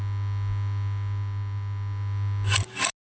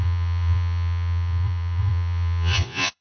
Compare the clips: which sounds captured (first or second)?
first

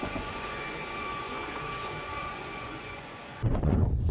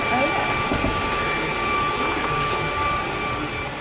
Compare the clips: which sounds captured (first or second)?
second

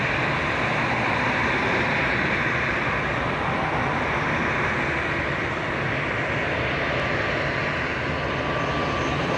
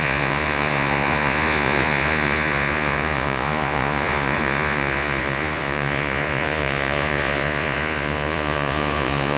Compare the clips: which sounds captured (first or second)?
first